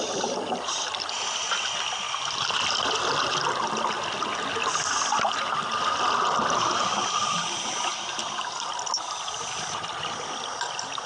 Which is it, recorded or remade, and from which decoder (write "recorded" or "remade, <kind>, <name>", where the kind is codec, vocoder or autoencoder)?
recorded